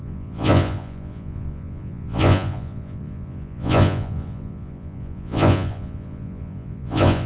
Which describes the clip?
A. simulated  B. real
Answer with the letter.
A